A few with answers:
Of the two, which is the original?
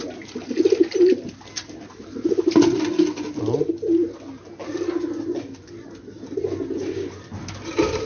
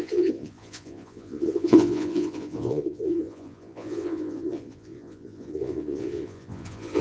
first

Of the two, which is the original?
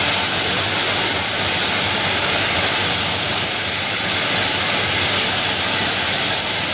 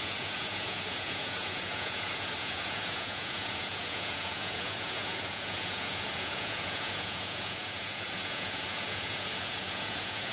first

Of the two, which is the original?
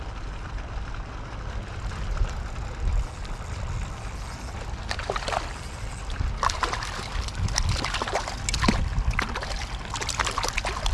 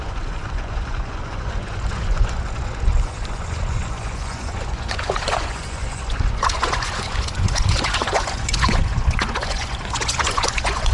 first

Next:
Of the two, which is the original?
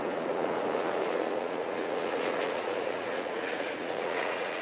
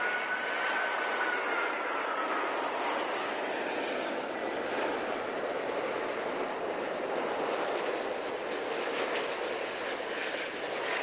second